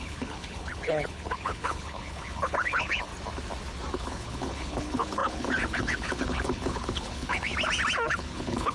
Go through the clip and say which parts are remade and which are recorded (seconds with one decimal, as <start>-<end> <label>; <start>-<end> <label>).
0.0-3.1 remade; 3.1-3.9 recorded; 3.9-7.5 remade; 7.5-8.1 recorded; 8.1-8.7 remade